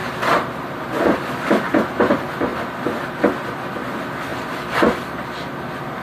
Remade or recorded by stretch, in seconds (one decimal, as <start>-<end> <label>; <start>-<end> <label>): 0.0-4.3 recorded; 4.3-5.4 remade; 5.4-6.0 recorded